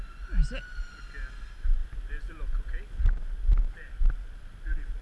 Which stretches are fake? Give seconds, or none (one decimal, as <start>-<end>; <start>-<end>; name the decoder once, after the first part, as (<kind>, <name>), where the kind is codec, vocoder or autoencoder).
none